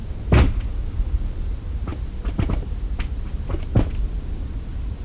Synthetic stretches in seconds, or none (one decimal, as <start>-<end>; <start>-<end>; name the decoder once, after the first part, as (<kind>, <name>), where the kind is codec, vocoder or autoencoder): none